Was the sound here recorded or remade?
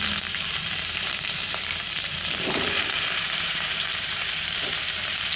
remade